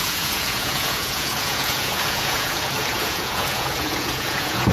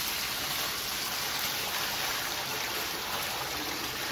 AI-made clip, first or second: first